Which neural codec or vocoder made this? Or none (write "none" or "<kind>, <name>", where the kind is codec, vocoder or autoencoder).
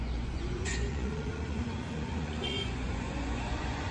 vocoder, Vocos